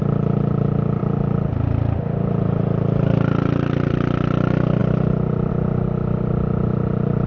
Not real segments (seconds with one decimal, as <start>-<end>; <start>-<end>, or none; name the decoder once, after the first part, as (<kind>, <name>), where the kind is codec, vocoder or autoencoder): none